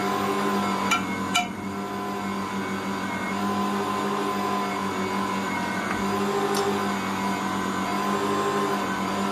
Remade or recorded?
recorded